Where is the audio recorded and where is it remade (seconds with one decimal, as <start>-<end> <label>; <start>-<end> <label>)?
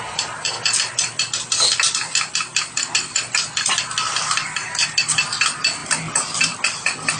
0.0-2.5 recorded; 2.5-3.8 remade; 3.8-7.2 recorded